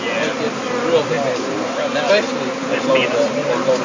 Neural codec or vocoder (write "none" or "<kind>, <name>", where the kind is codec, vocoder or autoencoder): none